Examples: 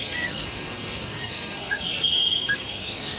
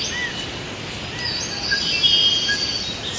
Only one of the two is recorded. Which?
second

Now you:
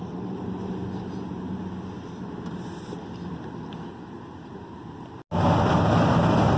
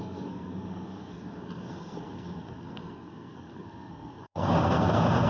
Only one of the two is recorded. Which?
first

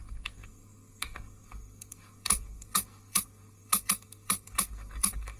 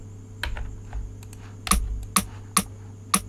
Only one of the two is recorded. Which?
second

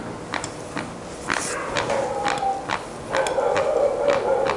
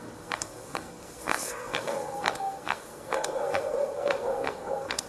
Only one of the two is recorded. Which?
first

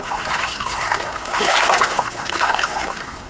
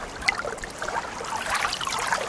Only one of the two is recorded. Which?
second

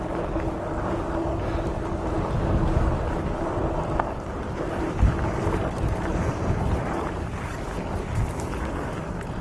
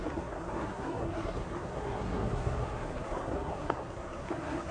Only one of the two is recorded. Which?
first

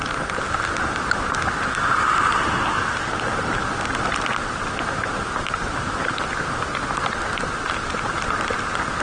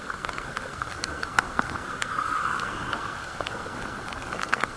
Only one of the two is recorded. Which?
first